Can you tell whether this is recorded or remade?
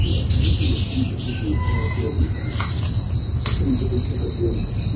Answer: recorded